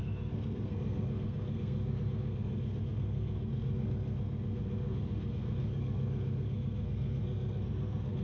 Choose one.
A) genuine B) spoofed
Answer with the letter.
B